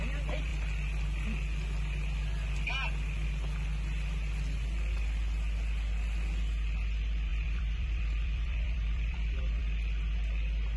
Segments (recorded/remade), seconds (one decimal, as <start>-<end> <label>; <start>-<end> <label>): 0.0-7.3 recorded; 7.3-9.6 remade; 9.6-10.8 recorded